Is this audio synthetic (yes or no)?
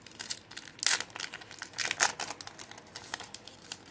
no